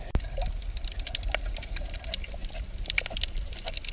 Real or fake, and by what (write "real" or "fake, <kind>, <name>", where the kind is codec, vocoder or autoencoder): real